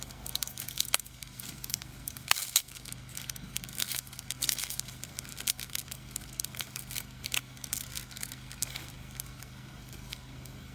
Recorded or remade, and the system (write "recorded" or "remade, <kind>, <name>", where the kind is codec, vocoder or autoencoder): remade, codec, SNAC